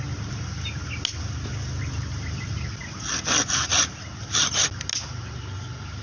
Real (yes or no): yes